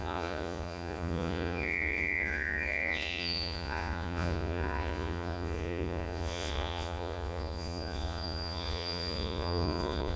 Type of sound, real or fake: fake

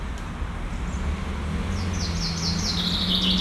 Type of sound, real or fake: real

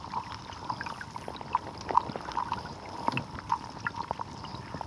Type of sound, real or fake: real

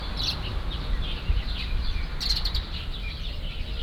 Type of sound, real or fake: real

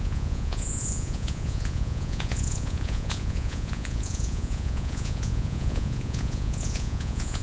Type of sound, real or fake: fake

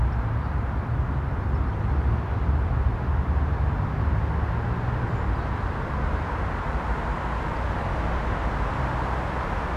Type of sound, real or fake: real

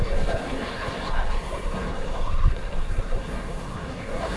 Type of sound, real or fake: fake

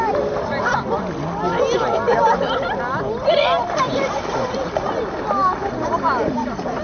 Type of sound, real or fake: real